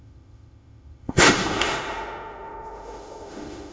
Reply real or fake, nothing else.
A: fake